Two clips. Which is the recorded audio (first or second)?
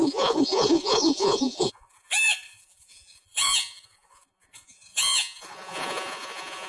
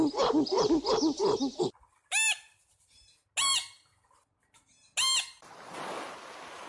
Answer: second